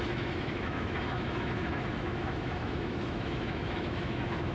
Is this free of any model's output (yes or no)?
no